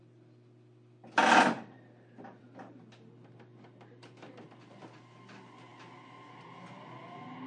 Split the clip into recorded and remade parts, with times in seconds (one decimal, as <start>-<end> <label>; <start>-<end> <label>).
0.0-7.5 recorded